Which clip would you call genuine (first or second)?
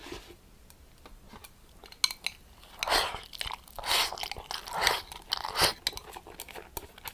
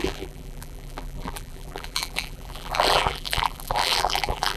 first